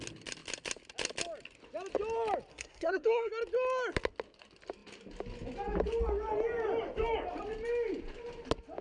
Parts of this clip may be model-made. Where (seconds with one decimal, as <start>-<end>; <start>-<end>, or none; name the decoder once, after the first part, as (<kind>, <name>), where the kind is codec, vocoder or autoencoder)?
2.5-3.3 (codec, SNAC)